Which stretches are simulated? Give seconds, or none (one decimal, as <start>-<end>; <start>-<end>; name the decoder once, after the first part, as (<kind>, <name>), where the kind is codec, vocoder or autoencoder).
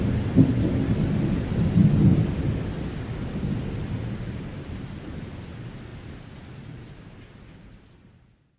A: none